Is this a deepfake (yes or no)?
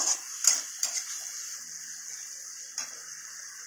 no